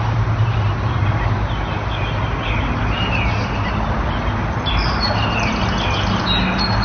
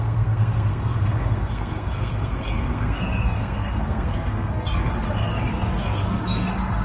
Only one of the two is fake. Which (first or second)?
second